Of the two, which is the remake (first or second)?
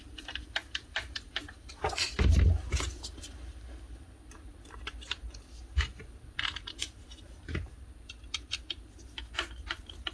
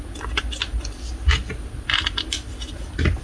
first